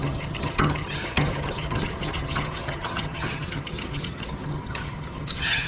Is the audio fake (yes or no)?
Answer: yes